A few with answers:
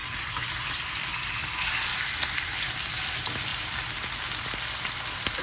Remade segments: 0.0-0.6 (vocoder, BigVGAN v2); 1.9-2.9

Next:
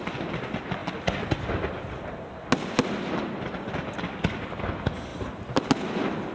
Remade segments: none

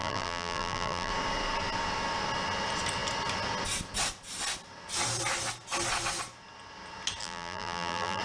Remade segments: 0.0-1.1 (vocoder, BigVGAN v2); 7.2-8.2